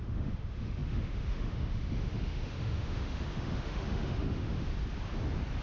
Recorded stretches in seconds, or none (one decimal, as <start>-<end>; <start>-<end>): 4.7-5.6